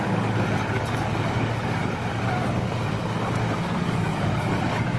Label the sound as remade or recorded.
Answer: remade